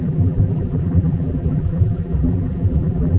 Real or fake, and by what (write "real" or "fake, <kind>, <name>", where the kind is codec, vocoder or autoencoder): fake, vocoder, BigVGAN v2